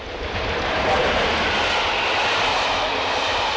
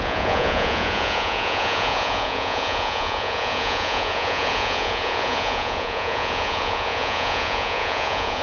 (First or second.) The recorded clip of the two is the first